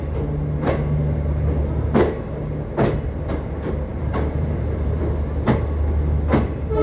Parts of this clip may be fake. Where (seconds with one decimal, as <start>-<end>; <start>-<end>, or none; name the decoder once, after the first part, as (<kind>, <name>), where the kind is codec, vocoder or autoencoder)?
3.9-5.0 (vocoder, BigVGAN v2)